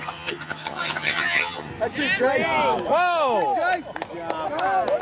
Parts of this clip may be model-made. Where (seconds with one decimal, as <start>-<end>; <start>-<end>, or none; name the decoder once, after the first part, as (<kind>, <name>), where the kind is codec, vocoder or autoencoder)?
0.0-1.7 (vocoder, HiFi-GAN)